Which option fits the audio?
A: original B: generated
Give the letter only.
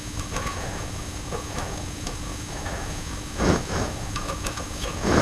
B